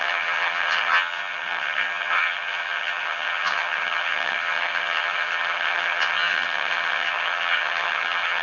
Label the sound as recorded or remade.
remade